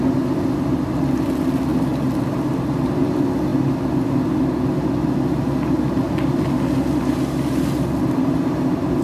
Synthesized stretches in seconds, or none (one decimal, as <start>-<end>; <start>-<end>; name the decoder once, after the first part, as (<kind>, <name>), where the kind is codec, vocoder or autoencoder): none